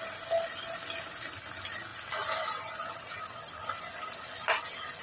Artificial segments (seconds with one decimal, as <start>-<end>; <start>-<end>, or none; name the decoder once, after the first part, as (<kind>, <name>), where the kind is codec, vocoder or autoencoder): none